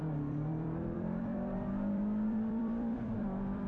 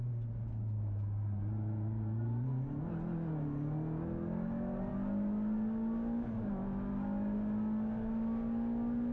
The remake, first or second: first